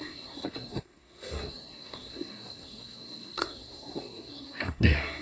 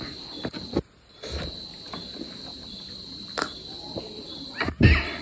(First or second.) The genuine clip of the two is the second